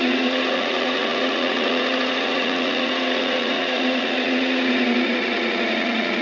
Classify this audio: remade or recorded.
remade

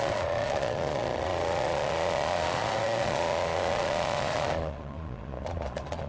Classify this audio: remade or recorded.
remade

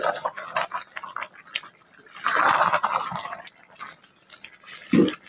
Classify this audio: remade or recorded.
recorded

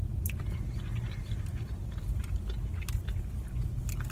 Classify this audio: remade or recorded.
recorded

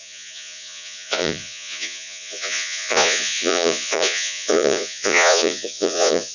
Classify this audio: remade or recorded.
remade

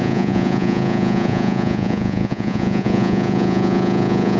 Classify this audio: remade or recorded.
remade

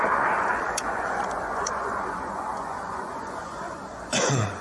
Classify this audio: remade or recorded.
remade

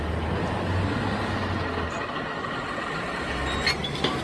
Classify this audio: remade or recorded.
recorded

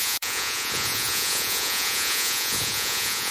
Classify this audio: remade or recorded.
remade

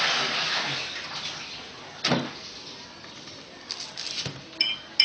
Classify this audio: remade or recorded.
recorded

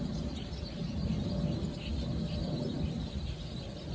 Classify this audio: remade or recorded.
recorded